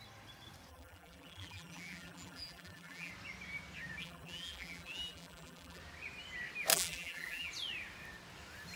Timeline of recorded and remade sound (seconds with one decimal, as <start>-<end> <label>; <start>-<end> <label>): 0.0-0.7 recorded; 0.7-3.1 remade; 3.1-4.0 recorded; 4.0-5.8 remade; 5.8-6.7 recorded; 6.7-7.5 remade; 7.5-8.8 recorded